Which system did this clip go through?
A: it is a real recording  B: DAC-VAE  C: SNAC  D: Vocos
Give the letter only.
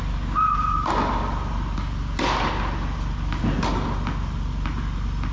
A